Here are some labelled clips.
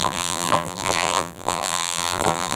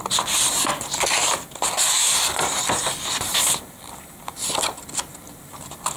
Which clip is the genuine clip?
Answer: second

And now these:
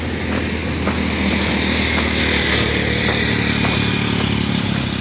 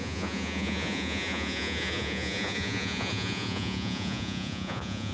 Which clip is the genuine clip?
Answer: first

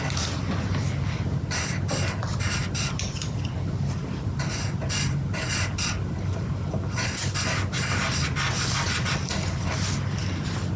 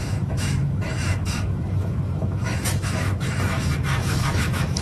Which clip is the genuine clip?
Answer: first